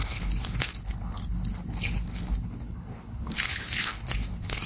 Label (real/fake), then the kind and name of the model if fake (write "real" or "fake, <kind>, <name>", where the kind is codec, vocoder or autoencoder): fake, codec, HILCodec